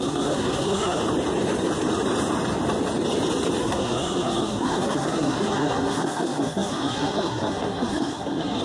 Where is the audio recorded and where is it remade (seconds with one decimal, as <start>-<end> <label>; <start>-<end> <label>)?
0.0-1.0 remade; 1.0-3.6 recorded; 3.6-8.6 remade